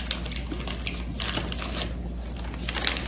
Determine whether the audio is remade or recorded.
recorded